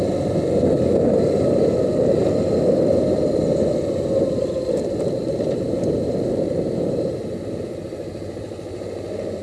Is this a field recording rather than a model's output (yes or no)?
yes